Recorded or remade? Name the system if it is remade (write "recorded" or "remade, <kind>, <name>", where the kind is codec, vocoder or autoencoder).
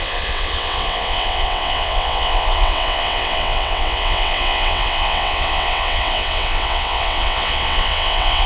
remade, vocoder, WaveNeXt